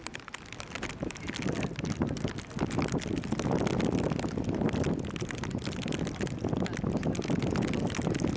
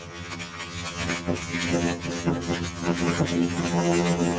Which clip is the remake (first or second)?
second